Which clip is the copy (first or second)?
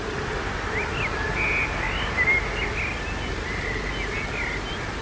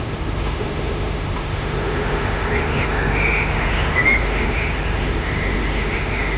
second